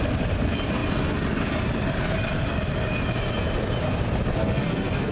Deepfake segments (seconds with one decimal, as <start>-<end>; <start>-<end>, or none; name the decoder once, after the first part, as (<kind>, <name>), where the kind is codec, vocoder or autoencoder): 4.4-5.1 (codec, SNAC)